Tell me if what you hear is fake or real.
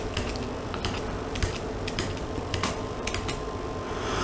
fake